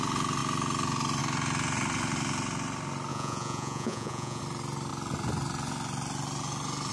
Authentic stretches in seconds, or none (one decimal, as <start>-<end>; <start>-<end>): 0.0-3.1; 4.4-6.9